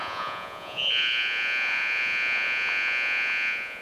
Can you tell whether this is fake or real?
fake